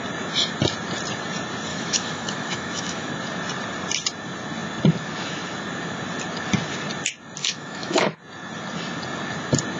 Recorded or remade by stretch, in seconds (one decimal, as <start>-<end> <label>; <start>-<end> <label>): 0.0-1.7 recorded; 1.7-3.1 remade; 3.1-7.4 recorded; 7.4-8.2 remade; 8.2-9.8 recorded